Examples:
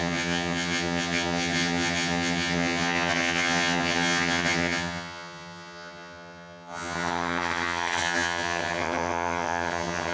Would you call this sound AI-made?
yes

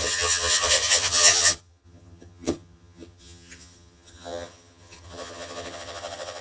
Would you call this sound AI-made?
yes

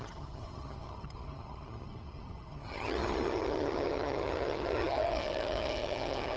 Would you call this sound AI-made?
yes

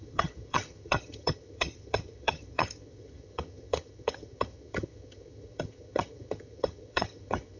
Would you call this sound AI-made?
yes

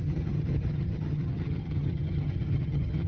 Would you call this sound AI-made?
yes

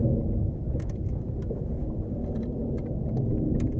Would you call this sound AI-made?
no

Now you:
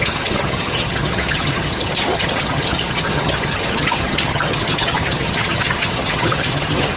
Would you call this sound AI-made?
yes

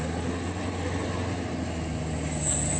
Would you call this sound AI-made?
no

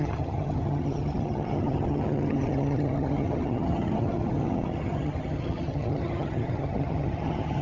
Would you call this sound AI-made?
yes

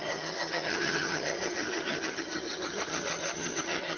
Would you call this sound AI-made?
yes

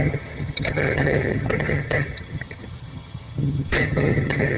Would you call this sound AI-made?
yes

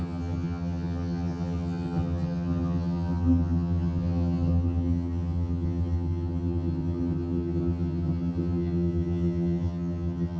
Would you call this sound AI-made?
yes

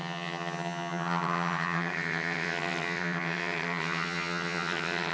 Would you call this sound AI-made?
yes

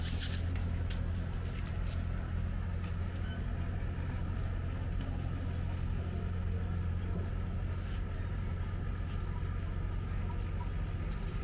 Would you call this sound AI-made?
no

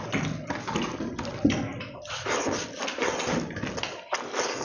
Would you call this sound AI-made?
no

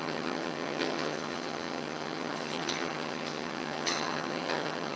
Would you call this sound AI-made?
yes